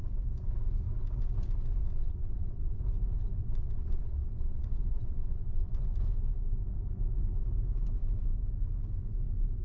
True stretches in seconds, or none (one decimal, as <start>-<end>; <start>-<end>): 0.0-1.8; 2.8-3.4; 5.8-9.6